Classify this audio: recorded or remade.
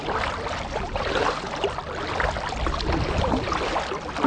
recorded